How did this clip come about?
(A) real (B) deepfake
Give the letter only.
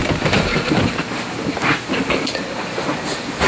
A